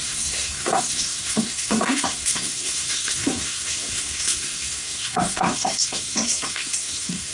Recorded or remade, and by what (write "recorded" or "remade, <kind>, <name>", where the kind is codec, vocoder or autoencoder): remade, codec, SNAC